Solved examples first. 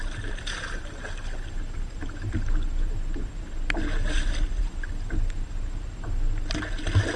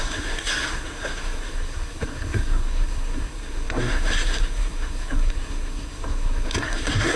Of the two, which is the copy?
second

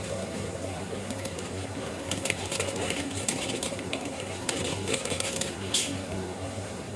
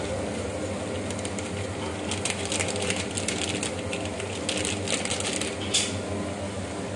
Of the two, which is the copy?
first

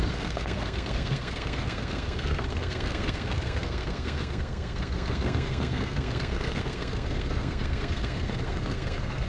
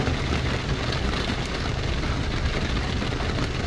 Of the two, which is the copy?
first